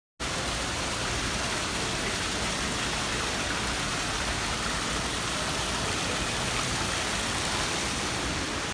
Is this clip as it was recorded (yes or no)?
yes